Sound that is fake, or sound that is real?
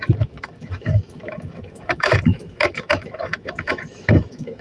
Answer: fake